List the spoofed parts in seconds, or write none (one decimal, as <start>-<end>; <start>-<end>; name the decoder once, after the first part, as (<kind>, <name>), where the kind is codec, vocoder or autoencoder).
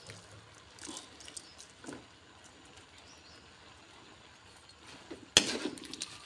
none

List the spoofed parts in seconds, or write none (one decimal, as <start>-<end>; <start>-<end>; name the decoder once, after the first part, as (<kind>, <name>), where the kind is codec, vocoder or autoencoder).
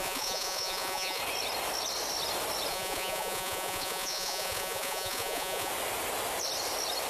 0.0-1.2 (vocoder, Vocos); 2.7-5.7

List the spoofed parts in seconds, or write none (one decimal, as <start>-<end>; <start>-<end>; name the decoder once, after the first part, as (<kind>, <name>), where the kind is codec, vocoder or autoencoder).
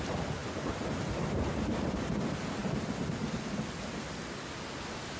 none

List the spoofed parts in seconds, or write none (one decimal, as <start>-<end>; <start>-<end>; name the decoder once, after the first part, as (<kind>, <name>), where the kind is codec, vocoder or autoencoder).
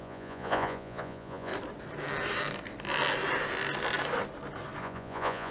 0.0-1.5 (vocoder, Vocos); 4.8-5.5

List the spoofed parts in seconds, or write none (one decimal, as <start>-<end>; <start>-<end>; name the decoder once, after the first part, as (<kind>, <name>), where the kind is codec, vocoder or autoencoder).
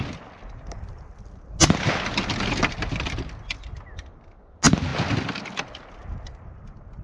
none